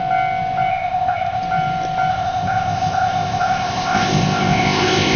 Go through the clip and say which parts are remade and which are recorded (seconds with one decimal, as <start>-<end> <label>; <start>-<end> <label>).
0.0-0.7 recorded; 0.7-1.4 remade; 1.4-2.1 recorded; 2.1-5.2 remade